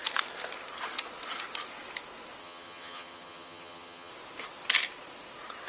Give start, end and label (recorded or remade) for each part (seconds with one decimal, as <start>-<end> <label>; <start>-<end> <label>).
0.0-2.4 recorded; 2.4-4.1 remade; 4.1-5.7 recorded